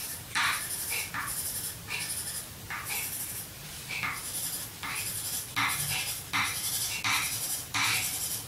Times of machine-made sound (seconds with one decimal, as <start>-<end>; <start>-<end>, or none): 0.0-1.1